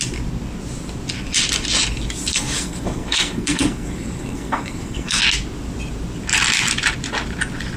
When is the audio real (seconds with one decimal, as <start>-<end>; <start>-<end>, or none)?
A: 0.0-2.3; 5.2-7.8